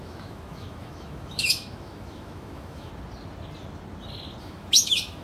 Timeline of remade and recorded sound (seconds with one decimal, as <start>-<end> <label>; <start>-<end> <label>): 0.0-2.9 remade; 2.9-4.4 recorded; 4.4-5.2 remade